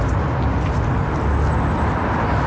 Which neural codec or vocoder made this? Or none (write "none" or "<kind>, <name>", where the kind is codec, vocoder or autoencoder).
none